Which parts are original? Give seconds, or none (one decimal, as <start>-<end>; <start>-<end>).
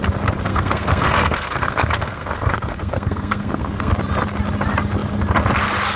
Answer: 0.0-0.5; 3.9-6.0